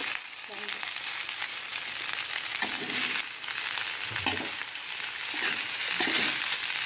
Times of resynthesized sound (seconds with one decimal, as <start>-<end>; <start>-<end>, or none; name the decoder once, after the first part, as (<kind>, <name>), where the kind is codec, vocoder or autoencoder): none